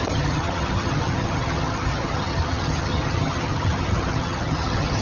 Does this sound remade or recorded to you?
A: remade